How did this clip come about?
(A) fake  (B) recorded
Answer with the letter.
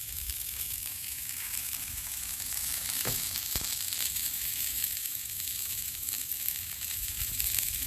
A